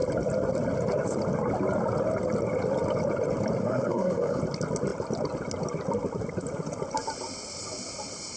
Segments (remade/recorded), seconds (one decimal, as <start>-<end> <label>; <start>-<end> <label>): 0.0-3.6 recorded; 3.6-4.4 remade; 4.4-8.4 recorded